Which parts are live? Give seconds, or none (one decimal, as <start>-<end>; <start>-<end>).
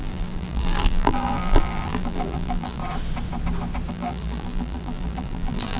2.8-3.9